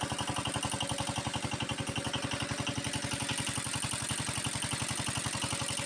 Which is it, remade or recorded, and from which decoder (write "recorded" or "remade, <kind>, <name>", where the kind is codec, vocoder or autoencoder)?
recorded